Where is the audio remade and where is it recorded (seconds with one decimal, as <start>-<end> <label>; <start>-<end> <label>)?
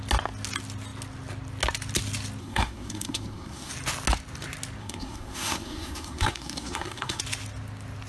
0.0-2.4 recorded; 2.4-3.7 remade; 3.7-4.8 recorded; 4.8-7.2 remade; 7.2-8.1 recorded